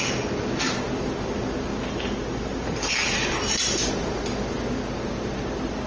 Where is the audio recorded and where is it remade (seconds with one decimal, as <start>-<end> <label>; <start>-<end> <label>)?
0.0-1.7 recorded; 1.7-3.9 remade; 3.9-5.9 recorded